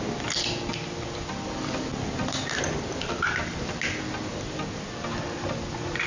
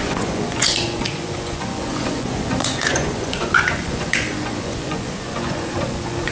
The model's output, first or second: second